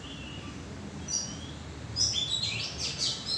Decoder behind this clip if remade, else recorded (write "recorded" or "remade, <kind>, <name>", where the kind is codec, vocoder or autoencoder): recorded